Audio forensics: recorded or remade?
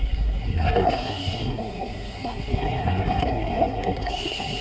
remade